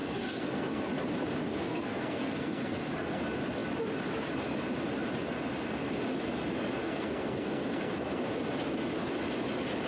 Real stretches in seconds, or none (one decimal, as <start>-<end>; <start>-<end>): 0.9-1.4; 3.2-6.8; 8.2-9.9